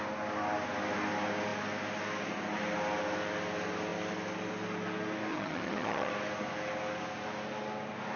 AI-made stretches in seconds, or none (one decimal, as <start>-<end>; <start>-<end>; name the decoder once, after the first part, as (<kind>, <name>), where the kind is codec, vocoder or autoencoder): 5.3-6.1 (vocoder, HiFi-GAN)